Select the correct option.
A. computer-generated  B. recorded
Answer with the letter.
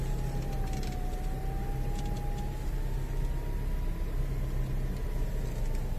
B